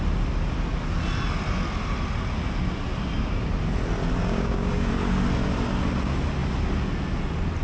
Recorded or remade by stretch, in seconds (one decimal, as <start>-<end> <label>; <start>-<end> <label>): 0.0-4.2 recorded; 4.2-4.9 remade; 4.9-7.6 recorded